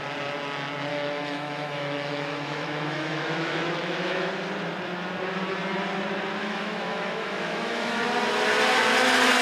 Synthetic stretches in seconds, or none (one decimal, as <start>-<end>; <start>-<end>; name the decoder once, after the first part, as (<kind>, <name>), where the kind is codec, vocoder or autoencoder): 0.9-4.3 (autoencoder, DAC-VAE); 6.4-8.0